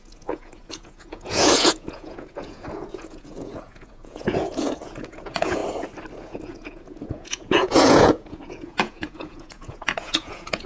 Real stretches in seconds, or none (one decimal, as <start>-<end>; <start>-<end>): 5.6-6.1